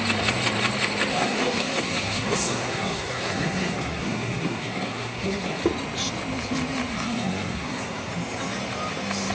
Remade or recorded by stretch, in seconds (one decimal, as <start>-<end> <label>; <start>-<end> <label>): 0.0-1.1 recorded; 1.1-5.6 remade; 5.6-6.9 recorded; 6.9-8.1 remade; 8.1-9.3 recorded